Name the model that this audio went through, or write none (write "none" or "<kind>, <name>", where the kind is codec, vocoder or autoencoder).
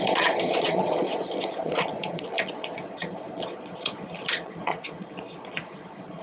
vocoder, Vocos